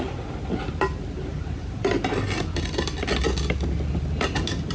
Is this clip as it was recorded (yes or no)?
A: yes